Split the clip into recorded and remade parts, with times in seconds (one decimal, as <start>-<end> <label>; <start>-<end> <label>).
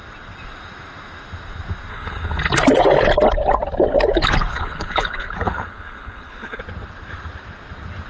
0.0-1.9 recorded; 1.9-2.4 remade; 2.4-4.5 recorded; 4.5-6.6 remade; 6.6-8.1 recorded